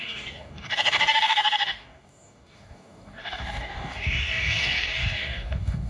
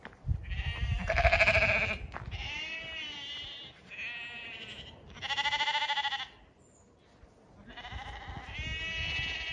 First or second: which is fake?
first